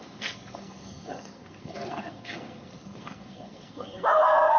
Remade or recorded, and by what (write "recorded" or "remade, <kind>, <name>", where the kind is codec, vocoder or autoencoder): remade, codec, SNAC